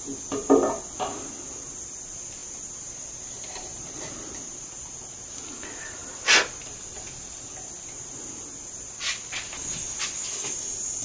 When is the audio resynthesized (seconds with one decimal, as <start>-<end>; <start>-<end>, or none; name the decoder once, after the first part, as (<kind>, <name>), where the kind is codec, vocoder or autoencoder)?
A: none